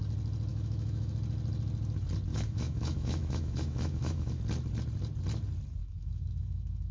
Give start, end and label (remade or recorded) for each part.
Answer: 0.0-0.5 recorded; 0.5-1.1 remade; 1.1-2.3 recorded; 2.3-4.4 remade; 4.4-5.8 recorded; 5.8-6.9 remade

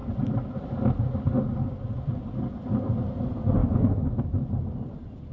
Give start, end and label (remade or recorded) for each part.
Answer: 0.0-3.6 recorded; 3.6-4.4 remade; 4.4-5.3 recorded

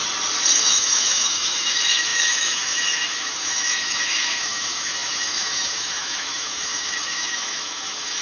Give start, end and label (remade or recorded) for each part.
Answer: 0.0-0.5 recorded; 0.5-8.2 remade

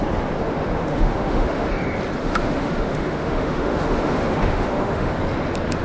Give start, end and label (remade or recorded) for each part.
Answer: 0.0-0.4 recorded; 0.4-1.7 remade; 1.7-2.2 recorded; 2.2-5.1 remade; 5.1-5.8 recorded